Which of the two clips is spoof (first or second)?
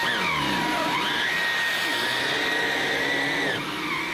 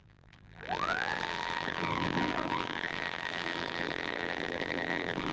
second